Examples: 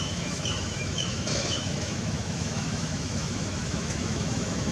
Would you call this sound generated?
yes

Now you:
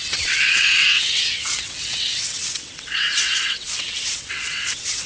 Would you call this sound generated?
yes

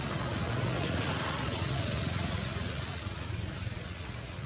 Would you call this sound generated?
yes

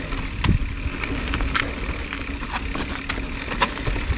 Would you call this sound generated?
no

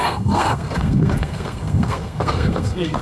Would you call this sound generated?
yes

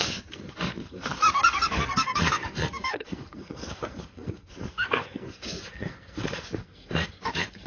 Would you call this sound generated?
yes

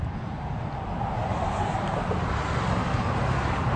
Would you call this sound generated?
no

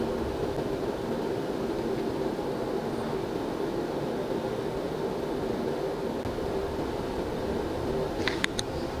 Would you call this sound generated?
no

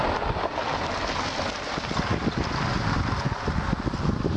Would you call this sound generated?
no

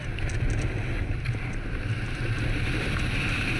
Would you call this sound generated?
no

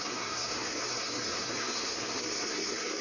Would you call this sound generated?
yes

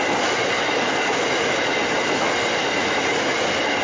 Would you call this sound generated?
no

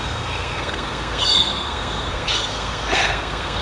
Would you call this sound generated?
yes